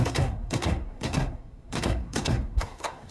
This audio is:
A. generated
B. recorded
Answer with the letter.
A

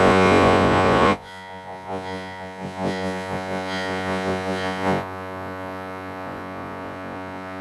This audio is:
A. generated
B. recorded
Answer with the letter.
A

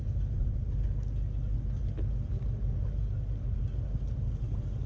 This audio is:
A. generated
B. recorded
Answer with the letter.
B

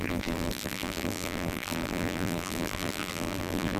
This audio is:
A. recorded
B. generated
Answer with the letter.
B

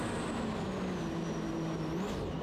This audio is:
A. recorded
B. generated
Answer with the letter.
A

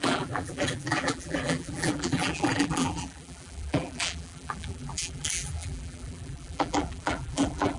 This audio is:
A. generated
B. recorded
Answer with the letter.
A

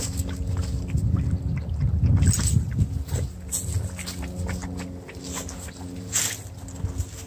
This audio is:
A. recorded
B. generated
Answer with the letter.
A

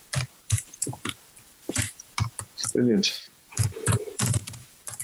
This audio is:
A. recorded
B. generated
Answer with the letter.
B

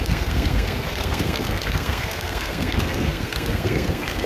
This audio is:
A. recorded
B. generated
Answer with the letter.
B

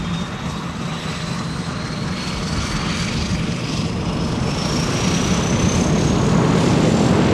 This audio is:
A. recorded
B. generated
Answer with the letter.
B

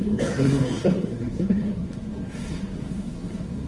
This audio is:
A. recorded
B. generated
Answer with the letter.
B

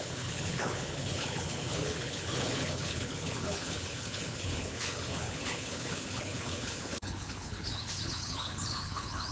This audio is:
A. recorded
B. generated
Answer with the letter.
B